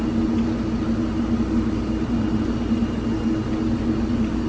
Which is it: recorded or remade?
recorded